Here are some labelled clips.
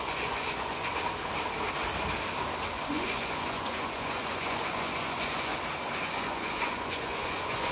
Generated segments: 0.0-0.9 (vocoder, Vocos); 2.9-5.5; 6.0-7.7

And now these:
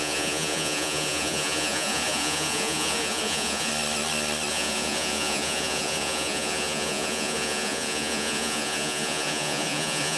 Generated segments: 0.0-3.7 (vocoder, Vocos); 4.5-10.2

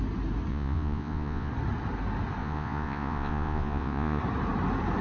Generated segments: 0.5-1.5 (vocoder, Vocos); 2.4-4.2

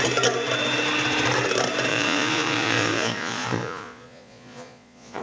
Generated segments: 1.9-5.2 (vocoder, Vocos)

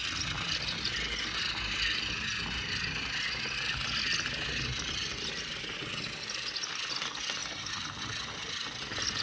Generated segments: none

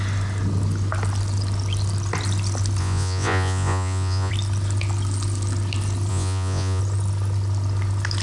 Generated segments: 2.8-4.3 (vocoder, Vocos); 6.1-6.8

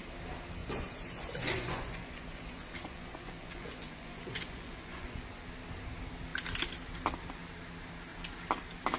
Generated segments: 0.6-5.4 (vocoder, Vocos)